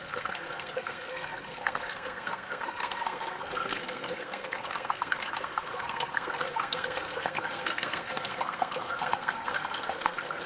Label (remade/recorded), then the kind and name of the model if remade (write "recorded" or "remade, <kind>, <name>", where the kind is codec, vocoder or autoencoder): remade, codec, SNAC